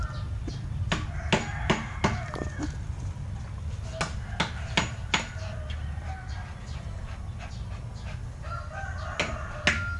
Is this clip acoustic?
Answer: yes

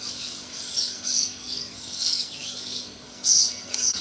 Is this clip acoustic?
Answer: no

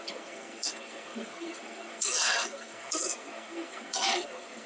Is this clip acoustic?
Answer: no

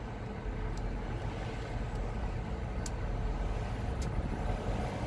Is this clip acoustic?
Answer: yes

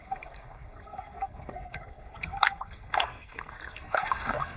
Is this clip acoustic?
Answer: no